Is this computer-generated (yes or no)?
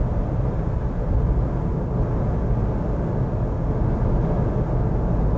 no